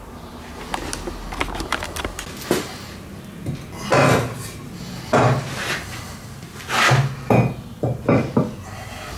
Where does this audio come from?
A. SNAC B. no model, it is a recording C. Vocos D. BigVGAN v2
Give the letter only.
B